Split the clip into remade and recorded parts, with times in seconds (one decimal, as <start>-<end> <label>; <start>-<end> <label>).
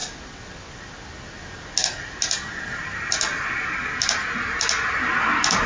0.0-5.7 recorded